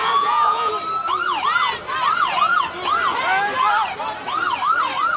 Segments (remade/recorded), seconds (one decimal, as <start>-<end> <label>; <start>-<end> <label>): 0.0-0.7 remade; 0.7-5.2 recorded